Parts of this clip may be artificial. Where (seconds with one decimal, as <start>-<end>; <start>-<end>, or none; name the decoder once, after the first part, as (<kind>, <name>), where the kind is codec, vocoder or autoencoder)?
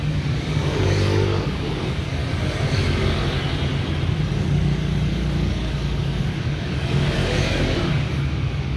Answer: 0.0-2.2 (codec, DAC); 4.4-8.8